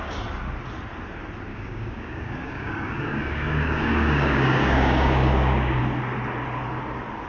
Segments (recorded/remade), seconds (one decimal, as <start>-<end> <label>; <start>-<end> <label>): 0.0-1.5 recorded; 1.5-5.8 remade; 5.8-7.3 recorded